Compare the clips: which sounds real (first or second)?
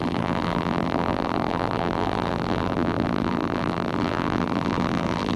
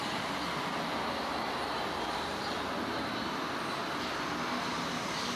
second